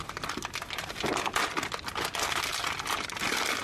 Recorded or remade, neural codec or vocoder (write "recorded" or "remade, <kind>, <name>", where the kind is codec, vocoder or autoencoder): recorded